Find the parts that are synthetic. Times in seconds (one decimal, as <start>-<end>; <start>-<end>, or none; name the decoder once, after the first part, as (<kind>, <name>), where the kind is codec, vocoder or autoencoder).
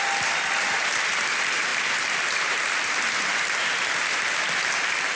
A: none